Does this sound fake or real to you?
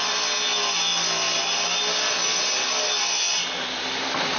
real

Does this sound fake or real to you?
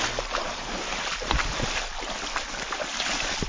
real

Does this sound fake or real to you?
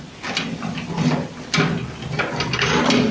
real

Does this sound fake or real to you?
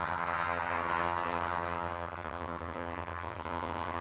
fake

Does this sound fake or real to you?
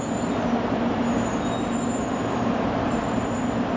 real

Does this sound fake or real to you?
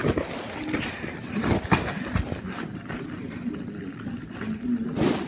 real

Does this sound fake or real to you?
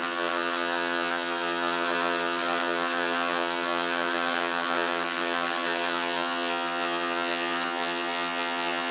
fake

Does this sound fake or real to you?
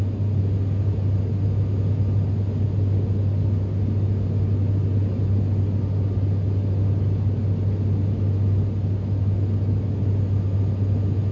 real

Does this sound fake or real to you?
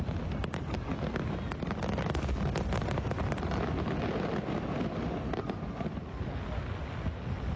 real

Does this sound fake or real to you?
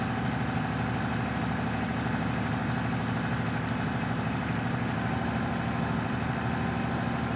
real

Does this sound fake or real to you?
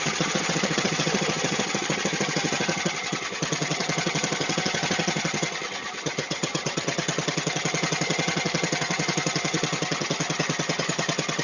fake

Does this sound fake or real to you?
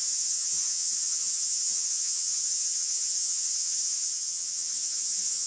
fake